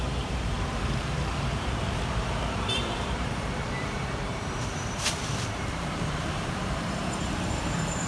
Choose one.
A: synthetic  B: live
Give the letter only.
A